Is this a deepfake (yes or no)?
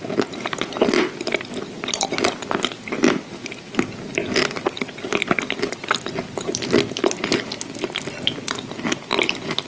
no